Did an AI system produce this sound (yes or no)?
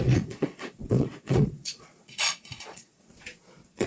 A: yes